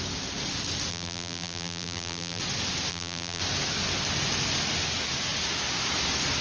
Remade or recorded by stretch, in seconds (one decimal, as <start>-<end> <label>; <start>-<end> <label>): 0.0-0.9 recorded; 0.9-2.4 remade; 2.4-2.9 recorded; 2.9-3.4 remade; 3.4-6.4 recorded